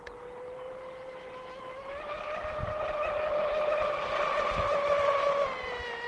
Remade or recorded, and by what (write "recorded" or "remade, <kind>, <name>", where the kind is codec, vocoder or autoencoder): recorded